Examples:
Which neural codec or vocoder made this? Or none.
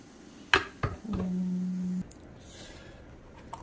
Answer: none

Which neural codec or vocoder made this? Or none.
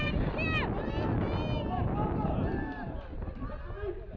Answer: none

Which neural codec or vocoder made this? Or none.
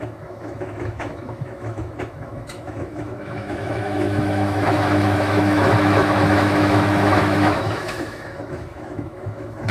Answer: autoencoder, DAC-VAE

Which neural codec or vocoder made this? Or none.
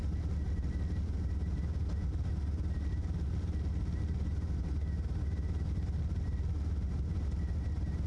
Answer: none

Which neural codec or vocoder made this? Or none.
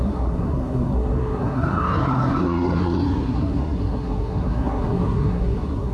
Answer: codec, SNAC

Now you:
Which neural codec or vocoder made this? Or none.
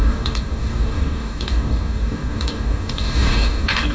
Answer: codec, DAC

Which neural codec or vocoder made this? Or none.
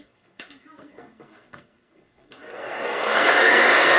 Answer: codec, SNAC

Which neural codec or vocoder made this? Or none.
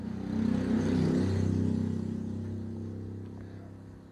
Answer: none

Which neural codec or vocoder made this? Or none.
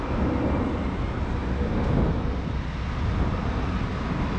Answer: none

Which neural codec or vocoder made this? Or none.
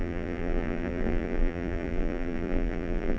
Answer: vocoder, BigVGAN v2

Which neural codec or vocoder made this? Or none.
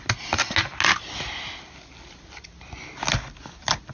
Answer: none